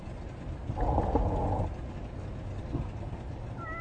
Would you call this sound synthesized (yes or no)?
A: no